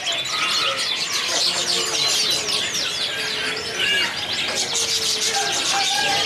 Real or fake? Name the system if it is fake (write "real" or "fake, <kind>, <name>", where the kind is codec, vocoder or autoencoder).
real